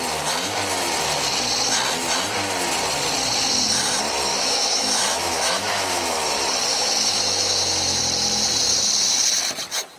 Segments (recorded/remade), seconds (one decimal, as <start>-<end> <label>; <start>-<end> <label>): 0.0-4.3 recorded; 4.3-6.3 remade; 6.3-6.7 recorded; 6.7-8.0 remade; 8.0-10.0 recorded